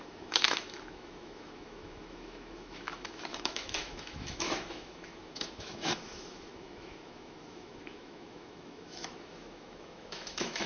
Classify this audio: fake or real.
fake